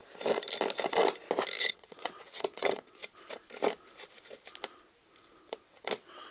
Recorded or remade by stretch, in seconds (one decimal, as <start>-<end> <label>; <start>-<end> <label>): 0.0-1.6 recorded; 1.6-3.0 remade; 3.0-5.4 recorded; 5.4-6.3 remade